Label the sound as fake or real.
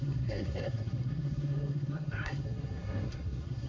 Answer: fake